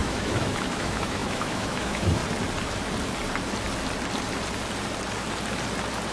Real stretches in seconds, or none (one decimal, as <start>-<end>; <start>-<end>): 2.2-6.1